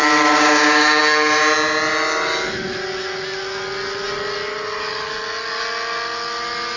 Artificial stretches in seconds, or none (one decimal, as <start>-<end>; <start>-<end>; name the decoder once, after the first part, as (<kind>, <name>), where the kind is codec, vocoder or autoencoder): 0.0-1.0 (codec, DAC)

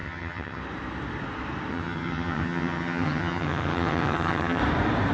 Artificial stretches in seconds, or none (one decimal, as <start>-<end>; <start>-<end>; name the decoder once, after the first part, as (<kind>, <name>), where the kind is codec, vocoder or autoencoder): 0.0-0.6 (vocoder, HiFi-GAN); 1.7-4.6